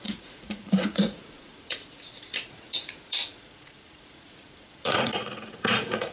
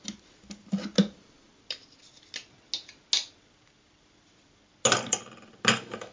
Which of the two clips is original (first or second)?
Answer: second